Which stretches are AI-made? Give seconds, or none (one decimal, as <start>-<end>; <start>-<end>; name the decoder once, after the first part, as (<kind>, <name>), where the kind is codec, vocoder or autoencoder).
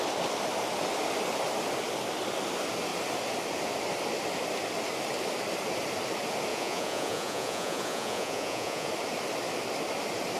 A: 6.5-8.9 (vocoder, Vocos)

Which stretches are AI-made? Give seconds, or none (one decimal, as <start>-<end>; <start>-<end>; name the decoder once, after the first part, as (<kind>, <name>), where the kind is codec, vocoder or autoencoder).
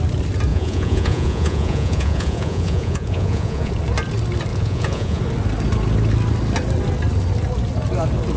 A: 0.5-3.7 (vocoder, Vocos); 4.5-5.2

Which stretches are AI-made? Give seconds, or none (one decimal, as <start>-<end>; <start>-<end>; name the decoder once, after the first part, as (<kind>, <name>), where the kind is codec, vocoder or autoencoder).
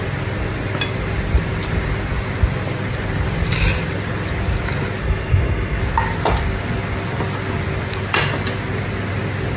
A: 5.0-5.8 (codec, SNAC)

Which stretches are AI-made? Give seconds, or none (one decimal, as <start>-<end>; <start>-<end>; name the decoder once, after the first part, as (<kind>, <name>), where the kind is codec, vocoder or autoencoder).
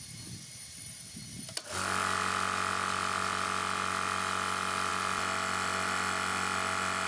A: none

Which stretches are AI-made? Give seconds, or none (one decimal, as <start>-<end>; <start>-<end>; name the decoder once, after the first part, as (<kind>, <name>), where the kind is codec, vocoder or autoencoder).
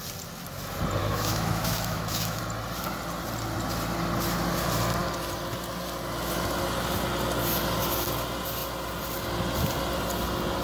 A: 1.0-2.4 (autoencoder, DAC-VAE)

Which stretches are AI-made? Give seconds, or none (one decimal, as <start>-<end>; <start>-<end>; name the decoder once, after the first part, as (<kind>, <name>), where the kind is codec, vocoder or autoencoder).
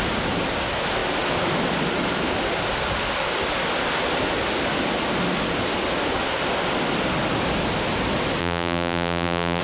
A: 8.4-9.6 (vocoder, BigVGAN v2)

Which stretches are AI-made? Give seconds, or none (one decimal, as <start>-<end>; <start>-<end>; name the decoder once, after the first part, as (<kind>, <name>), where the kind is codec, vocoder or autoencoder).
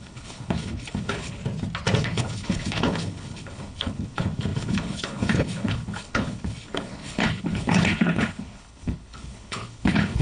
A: 0.0-1.4 (codec, HILCodec); 2.0-10.2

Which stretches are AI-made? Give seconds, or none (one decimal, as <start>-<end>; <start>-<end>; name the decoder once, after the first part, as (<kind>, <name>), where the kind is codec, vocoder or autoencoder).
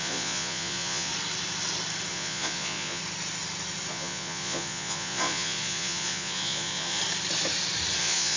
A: 0.0-1.1 (vocoder, Vocos); 2.1-3.0; 3.9-7.0; 8.0-8.4